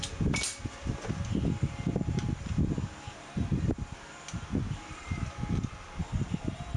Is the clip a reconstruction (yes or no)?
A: no